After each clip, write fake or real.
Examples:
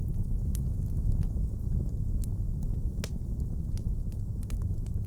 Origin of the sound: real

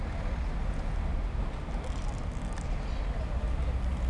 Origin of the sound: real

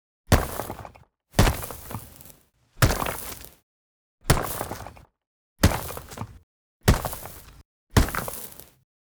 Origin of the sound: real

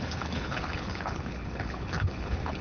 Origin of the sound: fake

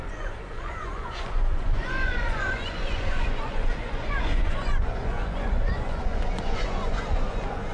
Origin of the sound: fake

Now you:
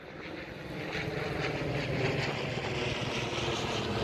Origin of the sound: real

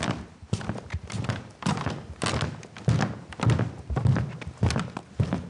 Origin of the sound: real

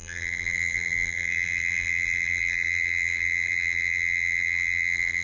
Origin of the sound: fake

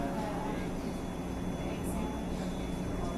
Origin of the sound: real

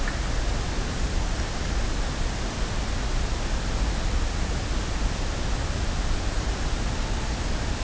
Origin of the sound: real